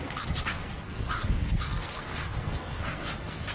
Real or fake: fake